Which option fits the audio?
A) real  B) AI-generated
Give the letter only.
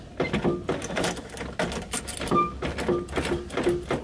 A